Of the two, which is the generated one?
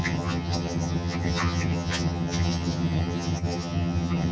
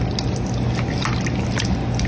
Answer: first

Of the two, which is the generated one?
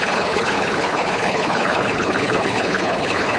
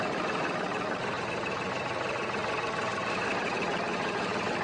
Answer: first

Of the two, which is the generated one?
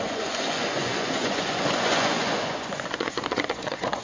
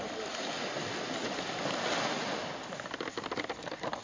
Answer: first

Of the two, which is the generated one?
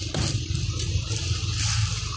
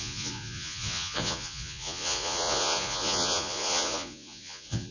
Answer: second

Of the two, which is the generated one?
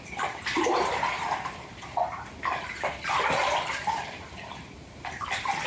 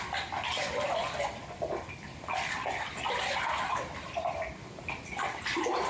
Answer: first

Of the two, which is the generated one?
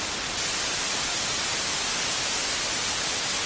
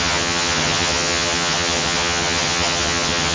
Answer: second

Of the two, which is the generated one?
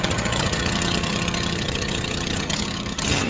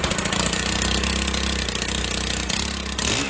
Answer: first